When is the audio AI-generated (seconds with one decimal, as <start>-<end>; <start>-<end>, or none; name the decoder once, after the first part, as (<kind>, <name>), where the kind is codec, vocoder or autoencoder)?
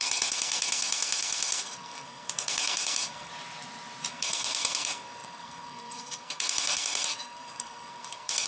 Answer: 0.0-3.3 (codec, SNAC); 4.1-8.5